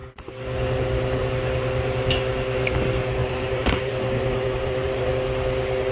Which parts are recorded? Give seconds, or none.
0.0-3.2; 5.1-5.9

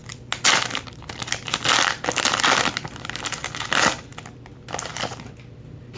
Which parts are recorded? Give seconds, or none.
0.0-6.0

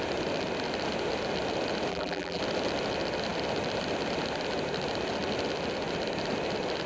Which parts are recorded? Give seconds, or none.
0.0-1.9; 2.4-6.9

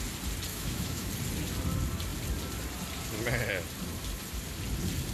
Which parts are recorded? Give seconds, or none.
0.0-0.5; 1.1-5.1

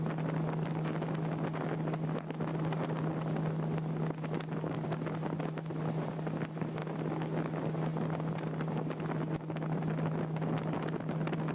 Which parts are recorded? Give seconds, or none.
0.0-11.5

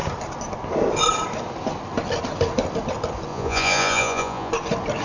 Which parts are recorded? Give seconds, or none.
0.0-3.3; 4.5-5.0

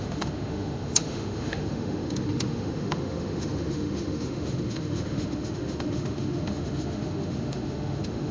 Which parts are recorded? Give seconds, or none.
none

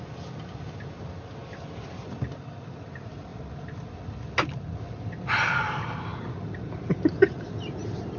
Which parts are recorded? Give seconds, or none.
0.0-8.2